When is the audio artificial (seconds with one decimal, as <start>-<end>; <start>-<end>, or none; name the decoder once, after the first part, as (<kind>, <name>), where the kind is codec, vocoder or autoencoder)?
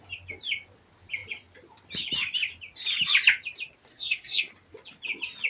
3.9-4.5 (codec, SNAC)